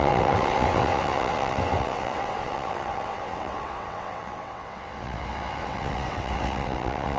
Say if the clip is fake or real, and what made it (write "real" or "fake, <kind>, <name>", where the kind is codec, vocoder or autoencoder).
fake, vocoder, WaveNeXt